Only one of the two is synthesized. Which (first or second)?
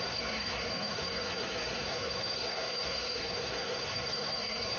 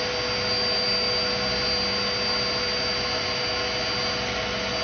first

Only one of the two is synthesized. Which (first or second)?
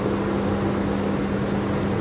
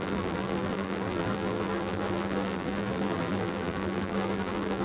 second